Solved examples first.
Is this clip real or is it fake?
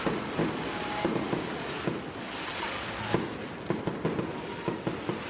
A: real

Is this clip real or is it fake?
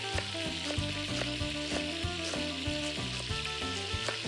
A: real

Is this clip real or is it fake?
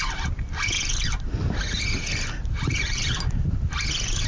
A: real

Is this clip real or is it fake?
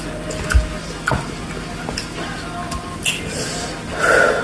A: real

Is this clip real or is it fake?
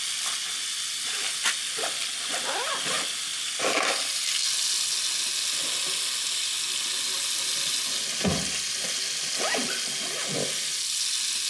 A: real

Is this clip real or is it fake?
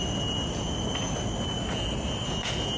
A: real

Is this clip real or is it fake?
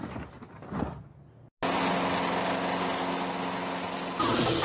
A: real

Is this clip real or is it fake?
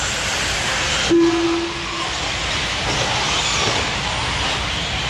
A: real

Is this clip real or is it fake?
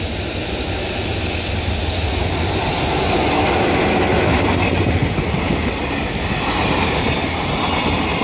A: real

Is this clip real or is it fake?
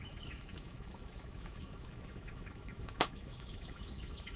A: fake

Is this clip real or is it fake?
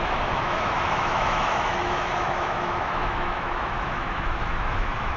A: fake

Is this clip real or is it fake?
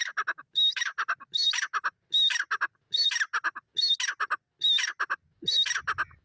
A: real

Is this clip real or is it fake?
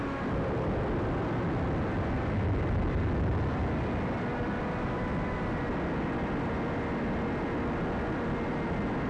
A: real